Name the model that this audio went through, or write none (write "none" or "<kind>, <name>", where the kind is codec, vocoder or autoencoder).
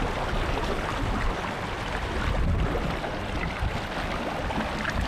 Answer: none